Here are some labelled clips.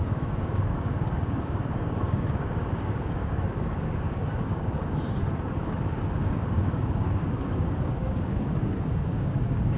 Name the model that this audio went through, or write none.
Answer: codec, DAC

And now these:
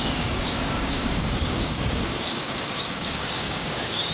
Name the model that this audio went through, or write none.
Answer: codec, DAC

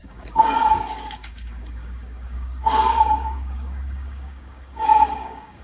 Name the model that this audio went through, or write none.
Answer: codec, DAC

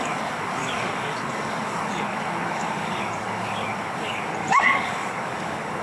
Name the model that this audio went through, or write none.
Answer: codec, DAC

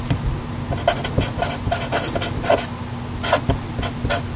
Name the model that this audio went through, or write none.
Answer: none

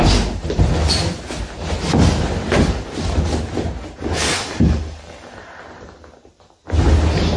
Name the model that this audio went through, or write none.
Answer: none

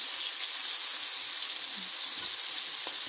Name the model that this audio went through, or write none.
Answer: none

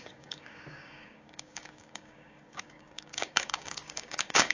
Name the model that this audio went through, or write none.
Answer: codec, DAC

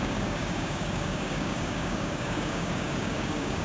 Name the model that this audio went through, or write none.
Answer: codec, DAC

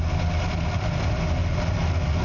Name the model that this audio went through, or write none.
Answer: none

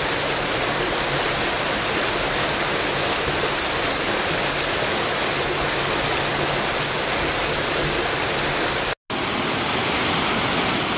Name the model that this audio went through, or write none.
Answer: none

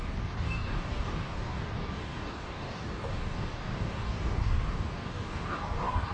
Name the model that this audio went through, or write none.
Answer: codec, DAC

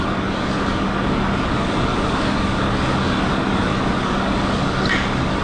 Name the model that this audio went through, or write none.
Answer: codec, DAC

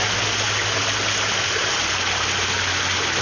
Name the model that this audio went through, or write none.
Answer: none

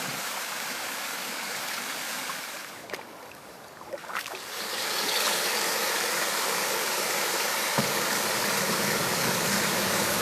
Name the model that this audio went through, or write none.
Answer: codec, DAC